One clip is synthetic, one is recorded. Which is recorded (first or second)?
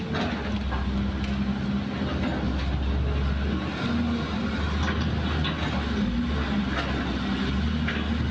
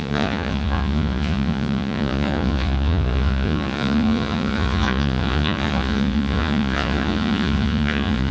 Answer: first